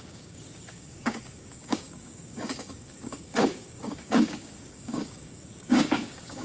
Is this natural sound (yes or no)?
no